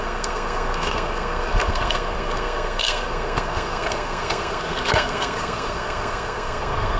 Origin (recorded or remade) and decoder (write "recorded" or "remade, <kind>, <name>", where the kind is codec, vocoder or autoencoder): remade, codec, SNAC